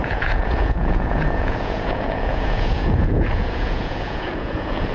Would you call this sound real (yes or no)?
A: no